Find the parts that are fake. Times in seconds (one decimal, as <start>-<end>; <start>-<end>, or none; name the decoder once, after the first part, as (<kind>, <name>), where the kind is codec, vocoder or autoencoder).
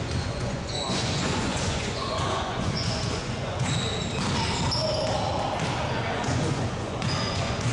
0.0-3.9 (vocoder, Vocos); 5.9-7.7